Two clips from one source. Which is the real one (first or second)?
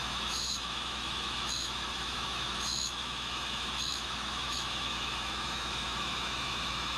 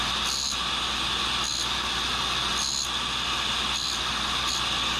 second